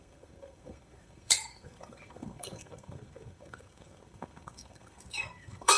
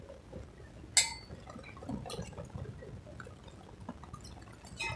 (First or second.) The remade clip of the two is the first